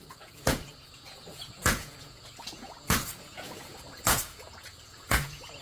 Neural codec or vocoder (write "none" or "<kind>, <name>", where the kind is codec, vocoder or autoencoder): vocoder, Vocos